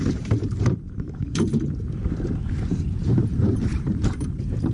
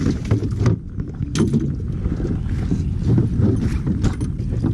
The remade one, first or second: first